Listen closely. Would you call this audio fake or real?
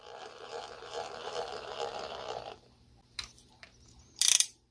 fake